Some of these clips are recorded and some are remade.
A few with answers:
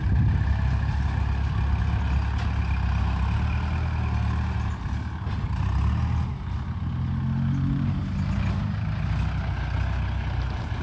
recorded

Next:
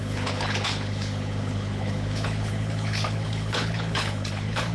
remade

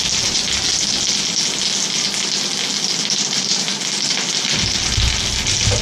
recorded